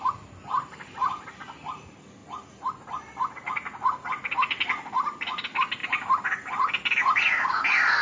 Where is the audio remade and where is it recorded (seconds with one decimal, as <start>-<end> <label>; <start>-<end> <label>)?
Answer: 0.0-8.0 recorded